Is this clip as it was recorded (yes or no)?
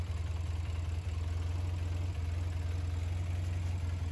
yes